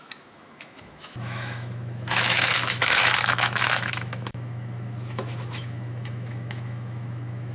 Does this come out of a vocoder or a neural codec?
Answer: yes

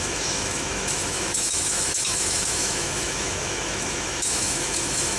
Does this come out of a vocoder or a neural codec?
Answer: yes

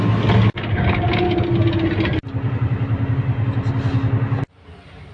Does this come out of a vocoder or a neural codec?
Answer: no